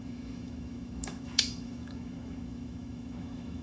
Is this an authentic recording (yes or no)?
no